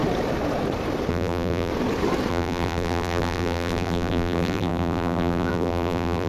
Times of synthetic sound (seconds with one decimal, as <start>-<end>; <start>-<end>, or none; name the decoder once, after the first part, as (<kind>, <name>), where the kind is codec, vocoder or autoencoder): 1.1-1.7 (vocoder, BigVGAN v2); 2.3-6.3